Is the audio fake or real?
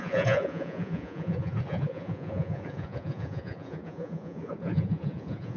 fake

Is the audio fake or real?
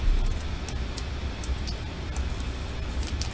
real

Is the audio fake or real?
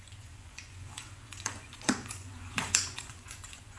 fake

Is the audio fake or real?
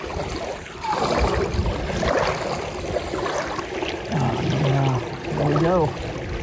real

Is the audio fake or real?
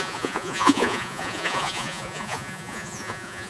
fake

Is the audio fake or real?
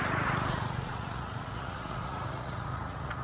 fake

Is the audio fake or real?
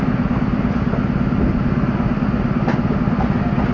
real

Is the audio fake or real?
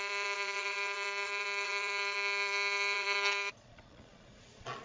fake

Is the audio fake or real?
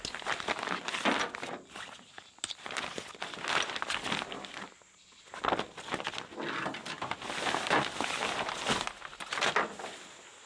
real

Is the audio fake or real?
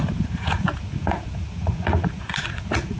fake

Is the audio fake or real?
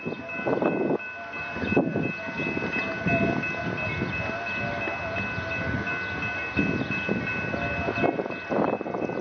real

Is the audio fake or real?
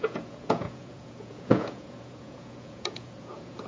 fake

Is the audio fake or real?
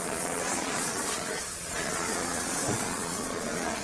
fake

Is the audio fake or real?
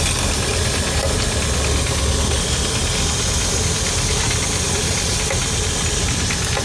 real